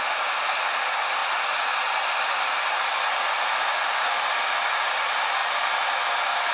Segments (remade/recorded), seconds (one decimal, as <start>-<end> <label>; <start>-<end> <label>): 0.0-6.5 recorded